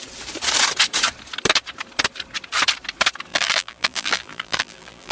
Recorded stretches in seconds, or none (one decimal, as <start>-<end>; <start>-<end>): 0.0-3.3